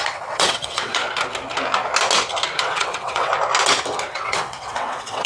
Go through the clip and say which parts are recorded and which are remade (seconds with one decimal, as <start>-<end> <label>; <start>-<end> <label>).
0.0-1.0 remade; 1.0-2.6 recorded; 2.6-3.3 remade; 3.3-4.1 recorded; 4.1-5.3 remade